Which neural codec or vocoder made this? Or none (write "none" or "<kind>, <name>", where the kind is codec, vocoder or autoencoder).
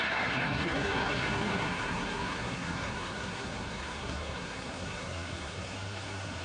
codec, SNAC